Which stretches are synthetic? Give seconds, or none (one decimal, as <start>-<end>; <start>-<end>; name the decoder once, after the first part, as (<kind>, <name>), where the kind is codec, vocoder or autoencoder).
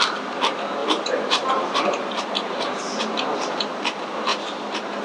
0.8-2.8 (vocoder, BigVGAN v2); 4.3-5.0